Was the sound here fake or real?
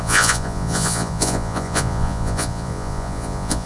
fake